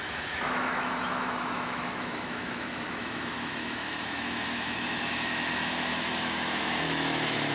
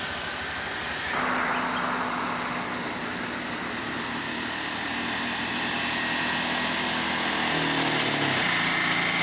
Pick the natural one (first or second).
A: second